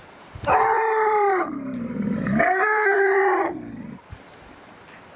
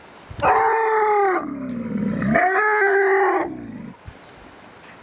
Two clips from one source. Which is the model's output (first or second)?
first